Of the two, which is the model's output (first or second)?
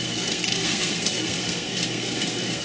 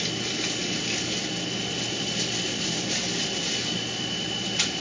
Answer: first